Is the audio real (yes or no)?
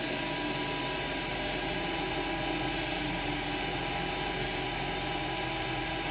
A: yes